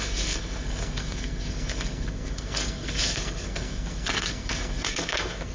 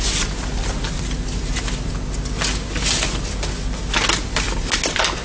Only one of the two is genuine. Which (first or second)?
second